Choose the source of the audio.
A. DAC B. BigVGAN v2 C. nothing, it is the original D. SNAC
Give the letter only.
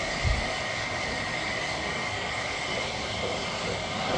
A